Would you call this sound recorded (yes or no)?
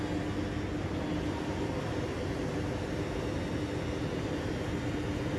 yes